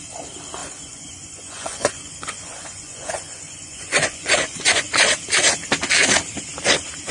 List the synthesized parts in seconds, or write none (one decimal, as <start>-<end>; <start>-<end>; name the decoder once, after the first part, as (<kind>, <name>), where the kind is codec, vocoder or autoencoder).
0.6-4.9 (vocoder, Vocos)